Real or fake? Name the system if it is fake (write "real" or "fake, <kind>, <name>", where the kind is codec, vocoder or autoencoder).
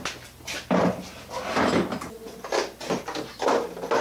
real